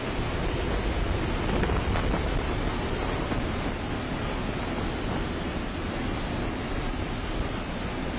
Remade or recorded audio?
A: recorded